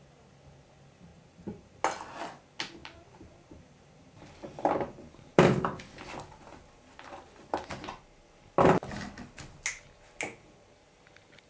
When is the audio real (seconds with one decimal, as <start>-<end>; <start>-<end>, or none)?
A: 0.0-1.1; 1.8-2.8; 5.6-11.5